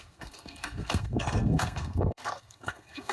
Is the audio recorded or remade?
remade